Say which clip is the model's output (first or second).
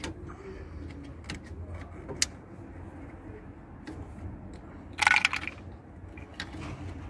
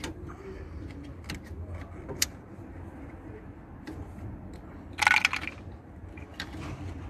second